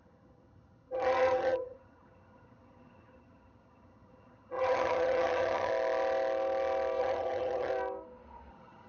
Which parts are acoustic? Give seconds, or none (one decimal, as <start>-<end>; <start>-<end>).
5.7-7.0; 7.7-8.5